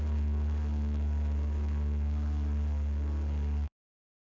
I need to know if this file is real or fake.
fake